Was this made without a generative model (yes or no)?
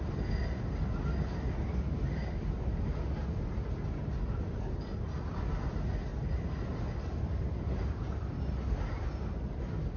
yes